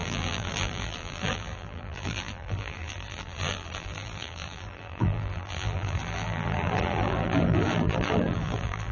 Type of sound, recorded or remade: remade